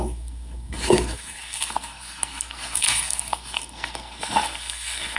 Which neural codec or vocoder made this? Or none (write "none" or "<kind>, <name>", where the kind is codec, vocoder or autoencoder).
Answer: codec, SNAC